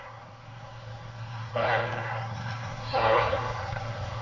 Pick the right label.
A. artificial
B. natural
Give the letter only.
A